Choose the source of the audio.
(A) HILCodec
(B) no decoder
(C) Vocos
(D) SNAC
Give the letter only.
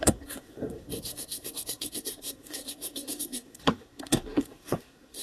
D